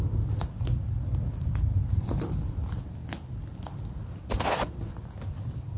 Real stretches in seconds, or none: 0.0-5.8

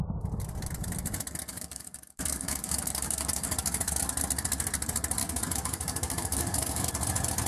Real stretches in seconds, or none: 0.0-1.5; 4.0-5.2; 6.9-7.5